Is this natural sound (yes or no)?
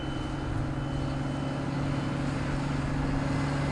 yes